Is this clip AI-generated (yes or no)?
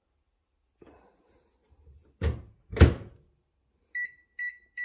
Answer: no